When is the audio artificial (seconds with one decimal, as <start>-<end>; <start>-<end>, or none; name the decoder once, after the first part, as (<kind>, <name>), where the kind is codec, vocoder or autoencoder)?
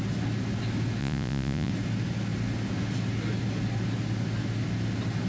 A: 1.0-1.7 (vocoder, Vocos)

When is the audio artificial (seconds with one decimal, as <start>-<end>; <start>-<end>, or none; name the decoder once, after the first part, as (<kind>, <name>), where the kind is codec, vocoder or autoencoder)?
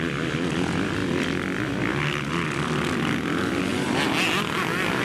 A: none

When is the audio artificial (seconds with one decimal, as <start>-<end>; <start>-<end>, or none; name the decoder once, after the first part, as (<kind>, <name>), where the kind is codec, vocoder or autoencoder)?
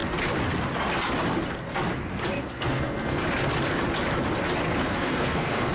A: 2.4-3.2 (codec, SNAC); 4.8-5.7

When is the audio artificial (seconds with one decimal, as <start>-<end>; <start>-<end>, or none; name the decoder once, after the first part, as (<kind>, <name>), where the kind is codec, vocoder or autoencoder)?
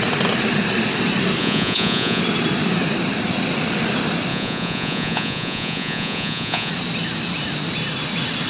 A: 1.4-2.2 (vocoder, Vocos); 4.3-6.7